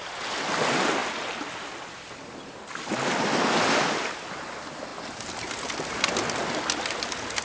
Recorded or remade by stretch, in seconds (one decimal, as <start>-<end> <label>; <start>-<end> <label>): 0.0-7.4 recorded